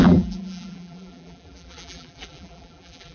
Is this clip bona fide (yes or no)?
no